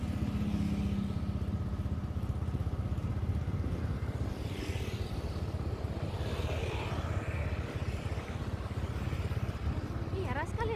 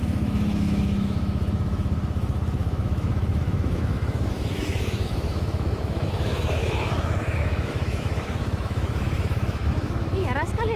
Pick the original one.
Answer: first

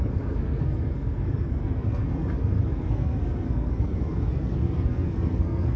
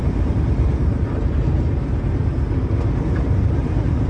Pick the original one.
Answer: second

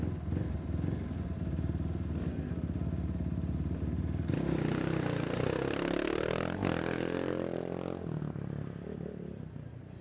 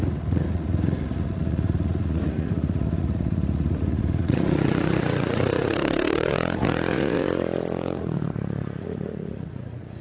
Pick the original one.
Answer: first